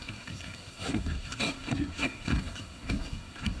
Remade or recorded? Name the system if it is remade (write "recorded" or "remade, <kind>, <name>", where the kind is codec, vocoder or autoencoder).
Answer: remade, codec, SNAC